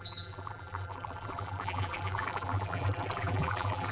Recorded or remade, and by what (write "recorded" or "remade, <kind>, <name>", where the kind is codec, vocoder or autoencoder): remade, vocoder, BigVGAN v2